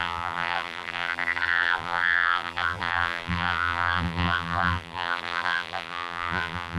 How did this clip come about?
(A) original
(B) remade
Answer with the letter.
B